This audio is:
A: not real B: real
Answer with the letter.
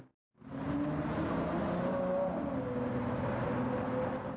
B